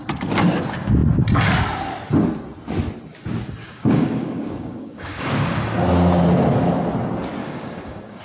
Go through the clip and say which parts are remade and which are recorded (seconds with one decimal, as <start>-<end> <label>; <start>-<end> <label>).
0.0-3.6 recorded; 3.6-5.6 remade; 5.6-7.4 recorded; 7.4-8.2 remade